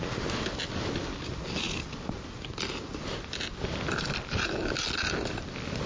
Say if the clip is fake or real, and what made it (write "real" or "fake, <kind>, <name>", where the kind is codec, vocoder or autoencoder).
real